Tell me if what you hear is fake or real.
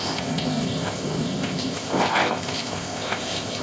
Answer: fake